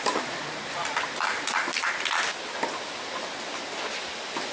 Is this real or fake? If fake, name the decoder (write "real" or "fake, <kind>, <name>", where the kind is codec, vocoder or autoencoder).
real